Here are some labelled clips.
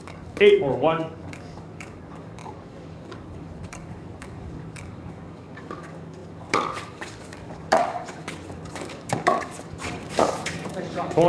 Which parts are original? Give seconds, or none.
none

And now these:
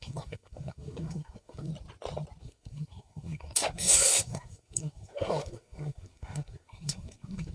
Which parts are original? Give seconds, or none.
1.7-2.4

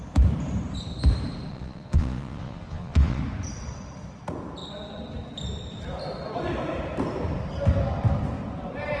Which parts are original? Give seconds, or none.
0.0-1.5; 3.2-9.0

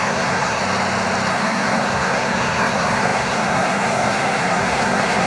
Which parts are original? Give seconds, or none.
0.6-1.3

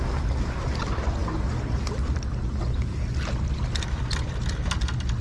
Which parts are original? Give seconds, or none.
0.0-5.2

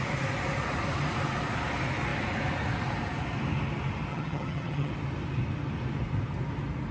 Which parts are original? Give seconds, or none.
0.0-4.1; 4.9-6.9

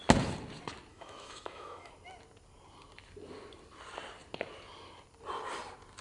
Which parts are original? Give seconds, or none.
0.0-0.9; 1.9-6.0

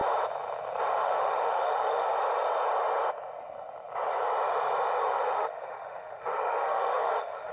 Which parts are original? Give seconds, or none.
0.0-0.9; 2.1-5.0